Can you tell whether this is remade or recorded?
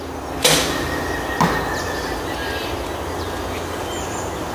recorded